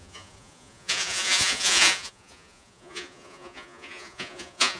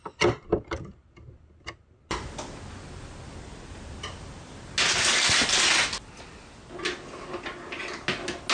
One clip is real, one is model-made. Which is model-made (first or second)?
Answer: first